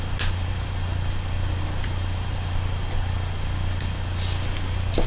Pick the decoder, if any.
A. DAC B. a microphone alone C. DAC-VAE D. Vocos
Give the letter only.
B